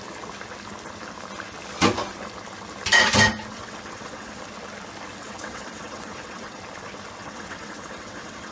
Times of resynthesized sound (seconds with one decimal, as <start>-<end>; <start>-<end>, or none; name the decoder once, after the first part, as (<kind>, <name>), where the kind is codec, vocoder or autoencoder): 3.5-4.4 (vocoder, WaveNeXt); 5.2-6.6; 7.2-8.5

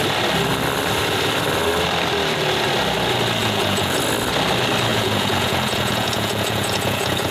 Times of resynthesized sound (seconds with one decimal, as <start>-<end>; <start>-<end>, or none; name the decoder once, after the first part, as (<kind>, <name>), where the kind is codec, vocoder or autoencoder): 3.4-4.0 (vocoder, Vocos); 4.9-7.3

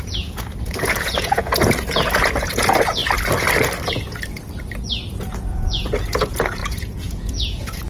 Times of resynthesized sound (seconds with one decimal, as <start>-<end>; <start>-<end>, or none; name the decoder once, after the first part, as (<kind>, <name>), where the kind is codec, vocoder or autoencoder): 0.0-3.0 (vocoder, Vocos); 3.9-4.4; 5.1-7.9

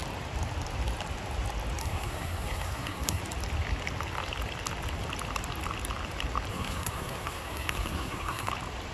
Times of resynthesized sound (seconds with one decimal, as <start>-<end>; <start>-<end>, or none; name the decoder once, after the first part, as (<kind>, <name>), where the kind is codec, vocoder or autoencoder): 1.8-3.2 (codec, SNAC); 6.5-8.5